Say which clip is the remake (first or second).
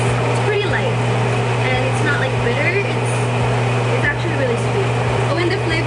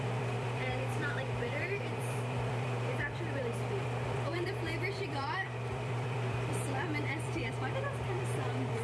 second